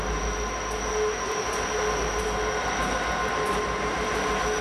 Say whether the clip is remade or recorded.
recorded